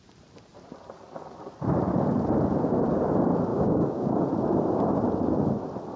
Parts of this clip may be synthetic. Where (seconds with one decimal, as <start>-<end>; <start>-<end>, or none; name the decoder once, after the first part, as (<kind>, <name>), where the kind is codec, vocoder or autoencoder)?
3.5-4.1 (codec, DAC)